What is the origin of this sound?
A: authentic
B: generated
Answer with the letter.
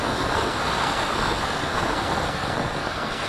B